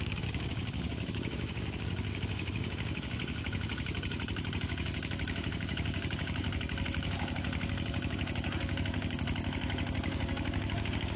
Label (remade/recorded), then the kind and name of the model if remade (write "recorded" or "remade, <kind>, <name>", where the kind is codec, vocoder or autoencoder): remade, codec, DAC